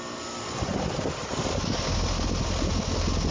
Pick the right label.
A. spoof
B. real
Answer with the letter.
B